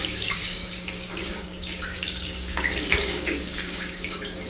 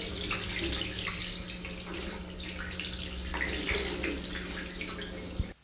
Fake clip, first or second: first